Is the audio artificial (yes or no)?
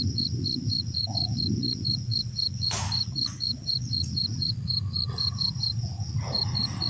yes